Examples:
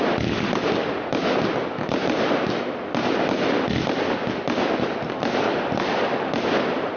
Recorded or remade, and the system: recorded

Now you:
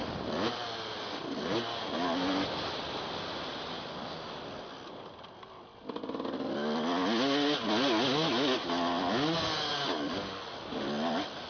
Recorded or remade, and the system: recorded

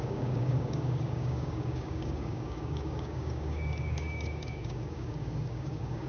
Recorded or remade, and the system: remade, codec, DAC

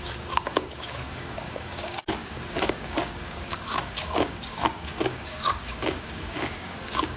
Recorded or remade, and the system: remade, codec, DAC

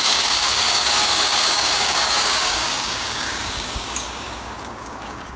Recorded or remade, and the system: remade, codec, DAC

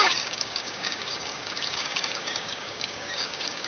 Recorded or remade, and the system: remade, codec, DAC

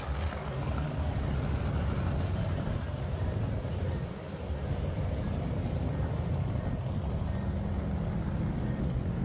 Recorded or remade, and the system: recorded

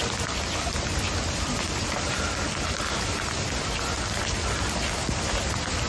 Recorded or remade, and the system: recorded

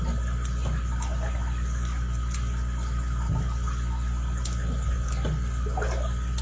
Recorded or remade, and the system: recorded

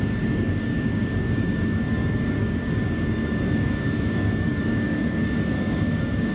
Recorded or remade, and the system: remade, codec, DAC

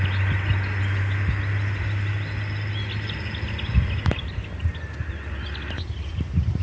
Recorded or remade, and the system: recorded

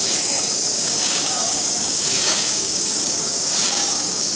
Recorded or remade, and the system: remade, codec, DAC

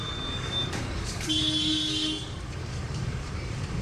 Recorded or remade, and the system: remade, codec, DAC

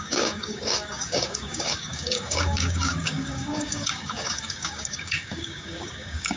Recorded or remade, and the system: remade, codec, DAC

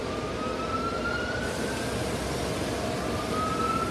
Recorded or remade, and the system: recorded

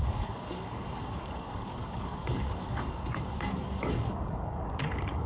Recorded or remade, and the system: remade, codec, DAC